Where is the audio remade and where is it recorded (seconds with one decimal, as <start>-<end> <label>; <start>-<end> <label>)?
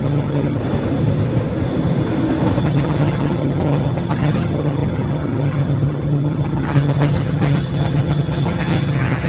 0.0-0.6 remade; 0.6-2.6 recorded; 2.6-9.3 remade